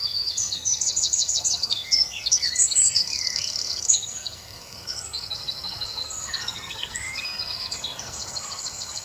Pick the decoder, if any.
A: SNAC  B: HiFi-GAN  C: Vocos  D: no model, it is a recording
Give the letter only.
A